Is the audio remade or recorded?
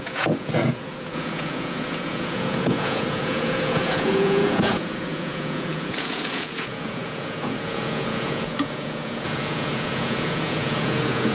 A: remade